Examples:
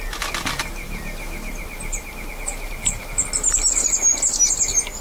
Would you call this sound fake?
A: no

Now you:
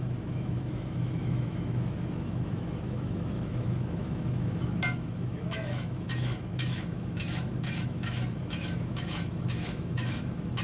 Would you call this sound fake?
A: yes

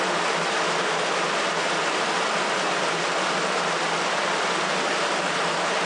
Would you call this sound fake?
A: no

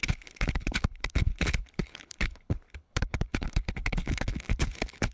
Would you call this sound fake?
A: yes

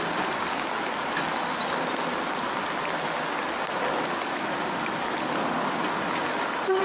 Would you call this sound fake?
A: no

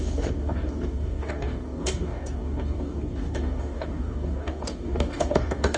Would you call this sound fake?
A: yes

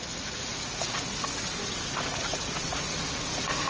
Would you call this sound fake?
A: yes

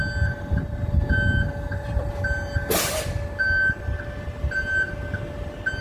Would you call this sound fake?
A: no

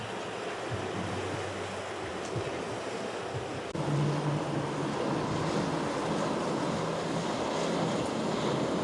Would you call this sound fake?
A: no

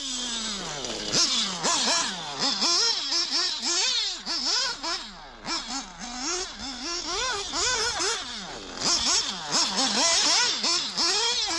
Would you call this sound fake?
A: no